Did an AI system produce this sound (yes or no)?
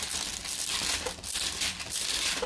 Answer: no